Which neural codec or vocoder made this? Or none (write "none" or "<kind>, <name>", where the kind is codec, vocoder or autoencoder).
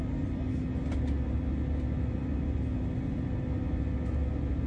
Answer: none